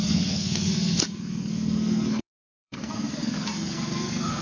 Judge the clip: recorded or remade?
remade